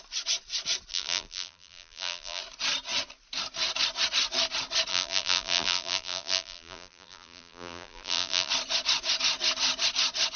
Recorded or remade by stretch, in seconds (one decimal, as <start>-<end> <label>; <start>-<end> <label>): 0.0-0.9 recorded; 0.9-2.4 remade; 2.4-4.9 recorded; 4.9-8.5 remade; 8.5-10.4 recorded